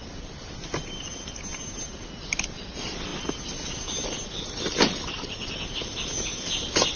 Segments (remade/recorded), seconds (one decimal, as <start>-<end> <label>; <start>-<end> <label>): 0.0-7.0 recorded